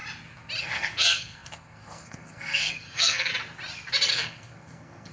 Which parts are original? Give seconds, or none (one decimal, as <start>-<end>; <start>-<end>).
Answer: 0.0-0.6; 3.3-4.1